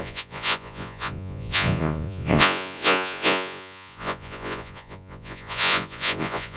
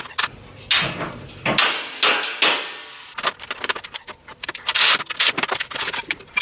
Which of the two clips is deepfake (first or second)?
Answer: first